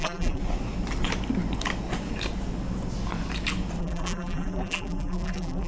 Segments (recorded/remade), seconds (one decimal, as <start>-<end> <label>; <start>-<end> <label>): 0.0-0.4 remade; 0.4-3.8 recorded; 3.8-5.7 remade